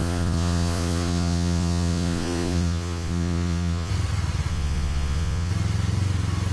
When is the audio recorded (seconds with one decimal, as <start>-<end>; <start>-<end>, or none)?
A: 3.9-4.5; 5.5-6.5

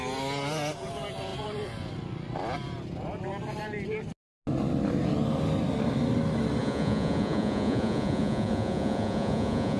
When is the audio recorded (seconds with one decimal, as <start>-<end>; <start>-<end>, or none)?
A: 0.0-6.6

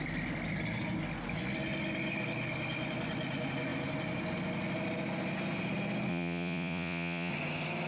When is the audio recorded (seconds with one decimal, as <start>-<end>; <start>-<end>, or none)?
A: 0.0-6.1; 7.3-7.9

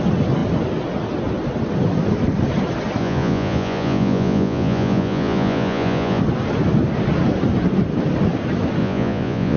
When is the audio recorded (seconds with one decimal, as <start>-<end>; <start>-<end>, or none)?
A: 0.0-3.0; 6.2-8.8

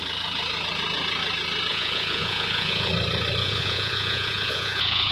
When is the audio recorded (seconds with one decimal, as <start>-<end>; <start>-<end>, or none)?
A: 0.0-1.7; 2.9-3.4

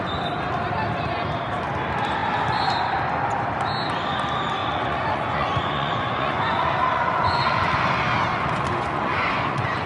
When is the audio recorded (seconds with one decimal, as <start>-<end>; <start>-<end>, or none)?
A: 0.0-4.6; 7.9-8.3

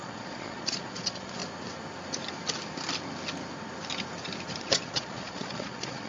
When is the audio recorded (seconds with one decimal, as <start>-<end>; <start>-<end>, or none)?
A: 1.4-4.6

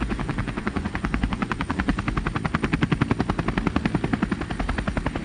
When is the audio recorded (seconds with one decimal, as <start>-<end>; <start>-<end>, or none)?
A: 1.9-5.2